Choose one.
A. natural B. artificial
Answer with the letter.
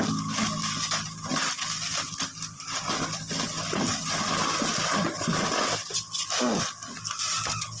A